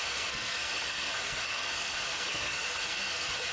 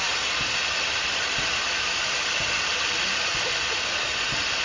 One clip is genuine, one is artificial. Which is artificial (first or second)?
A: first